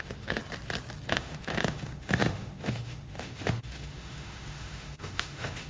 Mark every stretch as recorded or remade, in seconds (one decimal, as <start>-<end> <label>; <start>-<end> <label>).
0.0-0.4 remade; 0.4-1.1 recorded; 1.1-5.7 remade